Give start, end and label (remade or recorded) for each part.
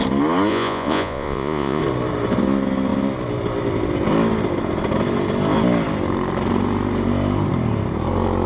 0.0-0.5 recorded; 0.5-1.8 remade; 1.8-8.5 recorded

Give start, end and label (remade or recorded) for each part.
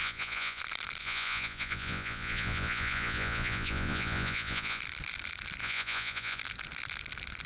0.0-0.6 remade; 0.6-1.0 recorded; 1.0-4.8 remade; 4.8-5.6 recorded; 5.6-6.4 remade; 6.4-7.5 recorded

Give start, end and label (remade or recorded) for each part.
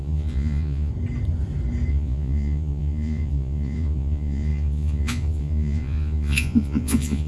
0.0-0.9 remade; 0.9-1.9 recorded; 1.9-7.3 remade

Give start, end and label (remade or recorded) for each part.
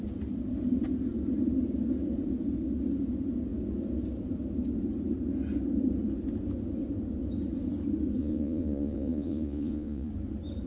0.0-8.2 recorded; 8.2-10.1 remade; 10.1-10.7 recorded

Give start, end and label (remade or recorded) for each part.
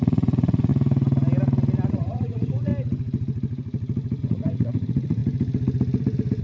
0.0-0.7 remade; 0.7-1.9 recorded; 1.9-2.7 remade; 2.7-4.2 recorded; 4.2-5.2 remade; 5.2-6.4 recorded